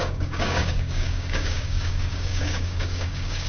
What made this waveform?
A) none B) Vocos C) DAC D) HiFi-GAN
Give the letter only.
C